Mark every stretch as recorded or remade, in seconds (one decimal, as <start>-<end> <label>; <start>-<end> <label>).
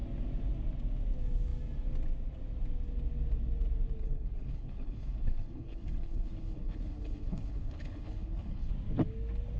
0.0-4.0 recorded; 4.0-8.7 remade; 8.7-9.6 recorded